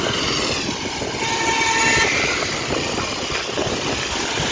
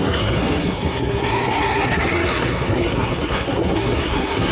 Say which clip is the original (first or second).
first